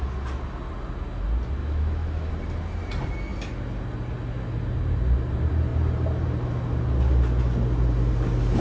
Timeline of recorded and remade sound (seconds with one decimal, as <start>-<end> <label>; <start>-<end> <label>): 0.0-1.6 recorded; 1.6-2.3 remade; 2.3-8.6 recorded